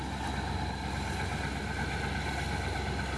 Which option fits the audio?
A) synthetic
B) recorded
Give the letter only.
B